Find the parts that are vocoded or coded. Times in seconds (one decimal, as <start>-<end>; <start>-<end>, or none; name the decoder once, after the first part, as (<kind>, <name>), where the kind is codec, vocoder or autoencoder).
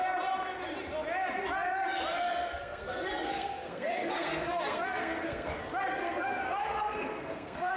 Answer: 2.6-5.6 (codec, SNAC); 6.0-7.8